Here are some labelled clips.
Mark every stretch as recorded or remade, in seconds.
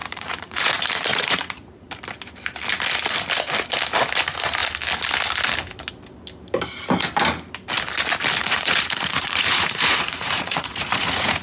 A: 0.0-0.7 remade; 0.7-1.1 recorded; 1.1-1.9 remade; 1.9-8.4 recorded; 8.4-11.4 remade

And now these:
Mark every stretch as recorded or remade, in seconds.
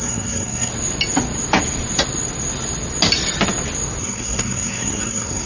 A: 0.0-0.7 remade; 0.7-4.0 recorded; 4.0-5.5 remade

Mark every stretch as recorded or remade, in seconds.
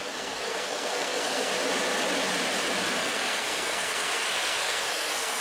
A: 0.0-1.5 remade; 1.5-3.0 recorded; 3.0-5.4 remade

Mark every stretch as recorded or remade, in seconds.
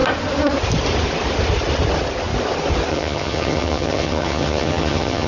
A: 0.0-2.9 recorded; 2.9-5.3 remade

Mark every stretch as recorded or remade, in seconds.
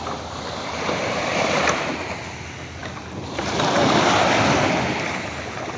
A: 0.0-1.0 recorded; 1.0-1.9 remade; 1.9-5.8 recorded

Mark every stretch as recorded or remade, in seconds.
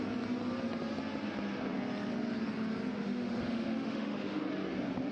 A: 0.0-2.9 recorded; 2.9-4.5 remade; 4.5-5.1 recorded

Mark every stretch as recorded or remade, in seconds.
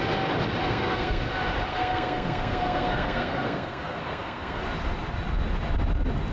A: 0.0-0.6 recorded; 0.6-1.2 remade; 1.2-1.7 recorded; 1.7-4.6 remade; 4.6-6.3 recorded